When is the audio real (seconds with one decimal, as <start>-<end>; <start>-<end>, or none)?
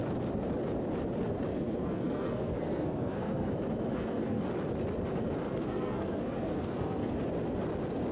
0.0-1.5; 3.5-3.9; 4.4-5.5; 7.1-8.1